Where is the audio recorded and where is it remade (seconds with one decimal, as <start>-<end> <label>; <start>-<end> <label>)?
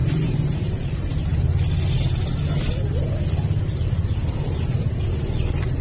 0.0-1.3 remade; 1.3-4.3 recorded; 4.3-5.8 remade